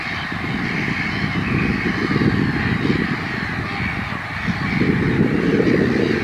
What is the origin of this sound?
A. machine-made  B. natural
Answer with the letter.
B